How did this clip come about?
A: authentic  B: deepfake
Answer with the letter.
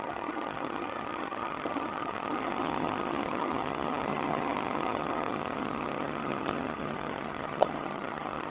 B